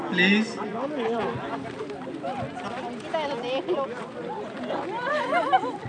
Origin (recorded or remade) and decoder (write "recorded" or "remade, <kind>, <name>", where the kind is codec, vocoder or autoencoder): recorded